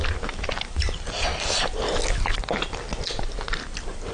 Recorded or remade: recorded